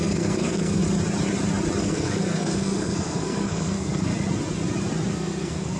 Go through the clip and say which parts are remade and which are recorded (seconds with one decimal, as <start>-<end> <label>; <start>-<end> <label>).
0.0-0.8 remade; 0.8-1.8 recorded; 1.8-4.1 remade; 4.1-5.1 recorded; 5.1-5.8 remade